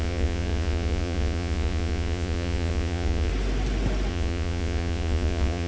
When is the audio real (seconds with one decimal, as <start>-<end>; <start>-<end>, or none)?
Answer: 3.3-4.1